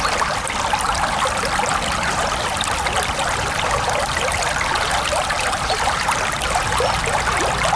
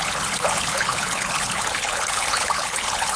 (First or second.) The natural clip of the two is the first